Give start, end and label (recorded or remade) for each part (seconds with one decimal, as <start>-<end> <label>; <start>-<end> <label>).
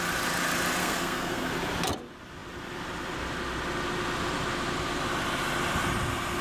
0.0-0.8 recorded; 0.8-1.5 remade; 1.5-6.4 recorded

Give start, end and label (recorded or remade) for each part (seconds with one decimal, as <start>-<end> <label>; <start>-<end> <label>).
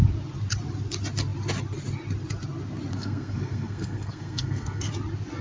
0.0-2.9 recorded; 2.9-4.9 remade; 4.9-5.4 recorded